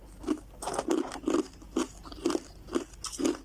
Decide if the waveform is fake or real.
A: real